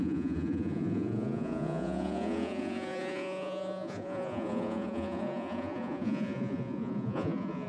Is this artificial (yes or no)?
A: yes